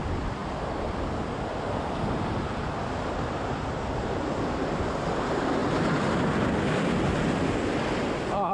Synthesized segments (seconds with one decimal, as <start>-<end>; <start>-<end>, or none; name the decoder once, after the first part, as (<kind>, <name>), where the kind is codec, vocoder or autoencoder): 0.0-0.4 (vocoder, BigVGAN v2); 3.7-5.6